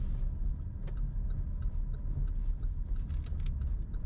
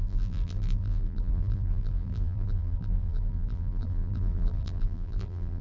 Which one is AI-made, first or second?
second